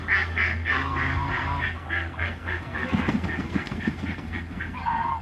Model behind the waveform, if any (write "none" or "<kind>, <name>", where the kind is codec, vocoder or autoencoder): codec, SNAC